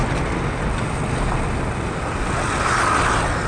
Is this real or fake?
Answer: real